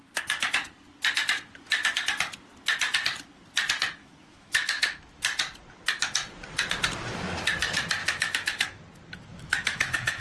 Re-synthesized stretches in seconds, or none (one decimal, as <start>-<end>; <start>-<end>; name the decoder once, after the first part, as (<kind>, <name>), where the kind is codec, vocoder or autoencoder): 4.0-5.2 (autoencoder, DAC-VAE); 8.0-8.8; 9.3-10.2